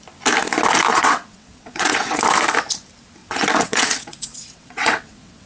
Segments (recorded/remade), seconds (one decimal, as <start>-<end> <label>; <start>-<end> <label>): 0.0-0.9 recorded; 0.9-2.2 remade; 2.2-3.2 recorded; 3.2-5.5 remade